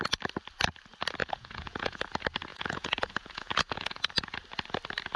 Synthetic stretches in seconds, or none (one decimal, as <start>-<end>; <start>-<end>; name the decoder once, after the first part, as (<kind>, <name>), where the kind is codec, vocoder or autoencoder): 1.2-2.0 (vocoder, Vocos); 2.5-4.1